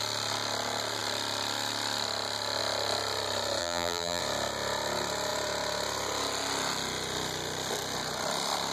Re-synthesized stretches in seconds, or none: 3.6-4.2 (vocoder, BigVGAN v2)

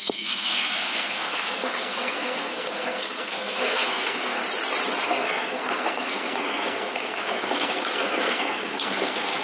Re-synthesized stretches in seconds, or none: 0.0-4.4 (codec, SNAC); 5.0-9.4

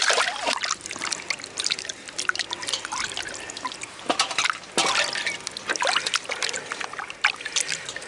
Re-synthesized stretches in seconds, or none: none

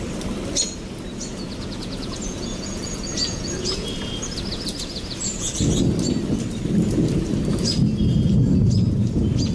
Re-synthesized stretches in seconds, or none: 1.1-5.7 (vocoder, Vocos)

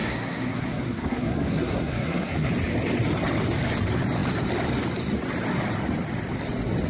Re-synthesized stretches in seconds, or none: 0.0-2.5 (codec, SNAC)

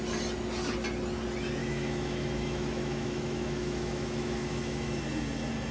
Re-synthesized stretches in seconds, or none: 1.6-5.0 (autoencoder, DAC-VAE)